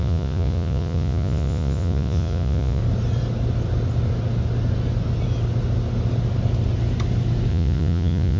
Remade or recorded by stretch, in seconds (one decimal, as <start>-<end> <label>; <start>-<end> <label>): 0.0-2.8 remade; 2.8-7.5 recorded; 7.5-8.4 remade